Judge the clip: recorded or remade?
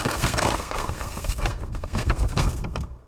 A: remade